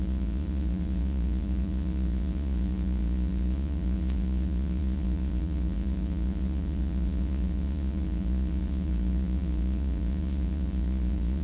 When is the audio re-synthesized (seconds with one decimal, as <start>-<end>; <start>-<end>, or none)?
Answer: 0.0-11.4